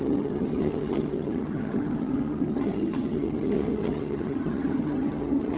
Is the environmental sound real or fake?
fake